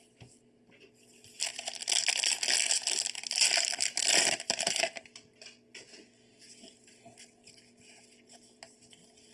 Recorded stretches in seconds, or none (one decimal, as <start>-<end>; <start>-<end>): 0.0-9.3